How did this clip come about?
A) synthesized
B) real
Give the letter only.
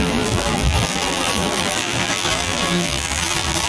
A